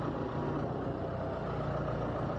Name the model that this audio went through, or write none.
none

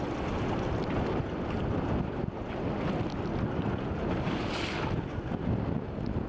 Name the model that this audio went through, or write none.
none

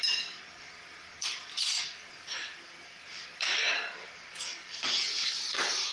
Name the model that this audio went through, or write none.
codec, DAC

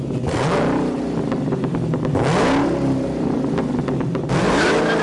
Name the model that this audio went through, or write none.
none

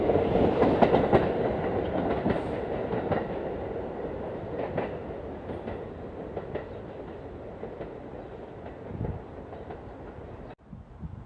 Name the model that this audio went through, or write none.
none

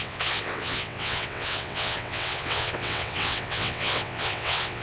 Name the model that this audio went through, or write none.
vocoder, WaveNeXt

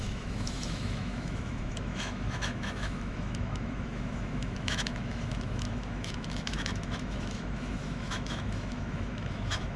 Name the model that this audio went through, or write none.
autoencoder, DAC-VAE